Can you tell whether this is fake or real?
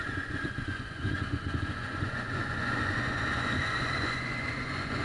fake